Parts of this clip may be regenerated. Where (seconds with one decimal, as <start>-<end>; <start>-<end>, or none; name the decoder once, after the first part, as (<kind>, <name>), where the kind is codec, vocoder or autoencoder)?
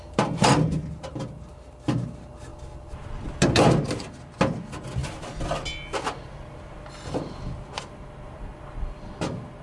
2.5-3.3 (vocoder, BigVGAN v2)